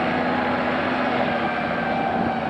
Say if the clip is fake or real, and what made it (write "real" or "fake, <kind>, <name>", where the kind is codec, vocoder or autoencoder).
real